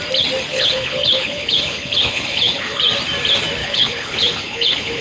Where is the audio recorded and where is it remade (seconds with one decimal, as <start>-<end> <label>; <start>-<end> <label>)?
0.0-0.5 recorded; 0.5-2.8 remade; 2.8-3.6 recorded; 3.6-5.0 remade